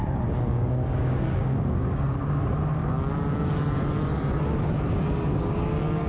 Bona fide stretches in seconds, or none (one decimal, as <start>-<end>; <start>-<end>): 0.0-0.5; 2.3-5.3